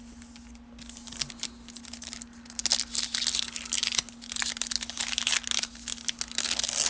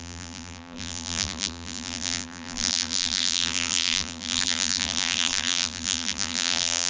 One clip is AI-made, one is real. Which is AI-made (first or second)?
second